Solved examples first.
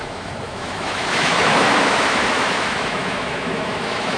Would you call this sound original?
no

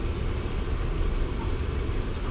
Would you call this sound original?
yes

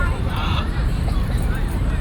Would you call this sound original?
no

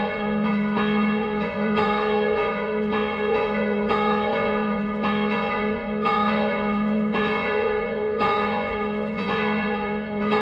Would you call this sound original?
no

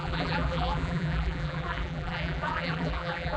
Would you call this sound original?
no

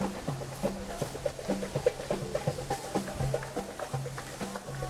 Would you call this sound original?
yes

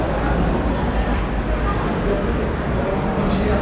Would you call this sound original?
yes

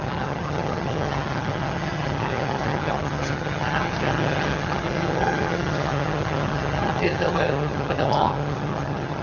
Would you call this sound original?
no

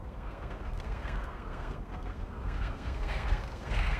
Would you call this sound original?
no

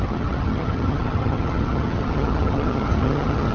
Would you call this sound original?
no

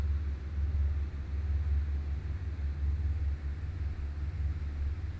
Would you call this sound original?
yes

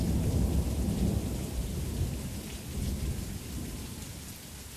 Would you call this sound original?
yes